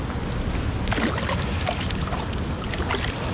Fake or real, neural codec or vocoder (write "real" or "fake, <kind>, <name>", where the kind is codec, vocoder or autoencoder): real